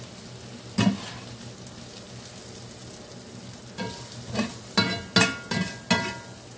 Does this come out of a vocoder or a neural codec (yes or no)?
no